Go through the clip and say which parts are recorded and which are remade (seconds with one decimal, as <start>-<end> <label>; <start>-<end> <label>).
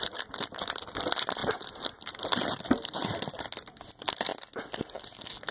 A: 0.0-4.3 remade; 4.3-5.5 recorded